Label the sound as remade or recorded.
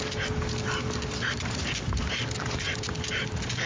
recorded